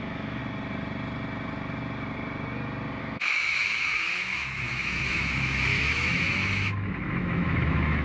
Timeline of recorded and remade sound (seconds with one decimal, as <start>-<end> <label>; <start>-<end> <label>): 0.0-0.4 remade; 0.4-3.0 recorded; 3.0-8.0 remade